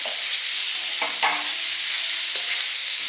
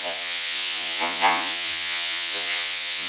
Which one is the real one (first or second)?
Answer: first